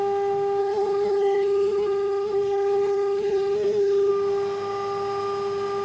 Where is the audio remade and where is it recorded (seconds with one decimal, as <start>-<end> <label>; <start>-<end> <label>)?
0.0-0.6 recorded; 0.6-4.1 remade; 4.1-5.8 recorded